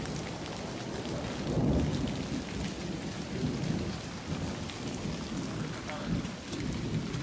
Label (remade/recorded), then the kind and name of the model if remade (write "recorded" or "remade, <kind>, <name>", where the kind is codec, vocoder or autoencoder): recorded